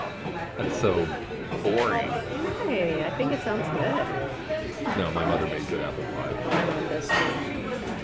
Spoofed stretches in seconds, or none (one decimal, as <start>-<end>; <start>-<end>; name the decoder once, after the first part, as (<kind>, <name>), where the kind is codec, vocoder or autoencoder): 0.0-8.0 (vocoder, BigVGAN v2)